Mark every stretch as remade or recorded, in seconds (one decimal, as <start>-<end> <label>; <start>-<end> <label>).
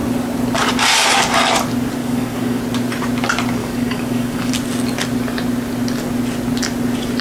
0.0-2.0 recorded; 2.0-2.6 remade; 2.6-3.6 recorded; 3.6-4.5 remade; 4.5-7.2 recorded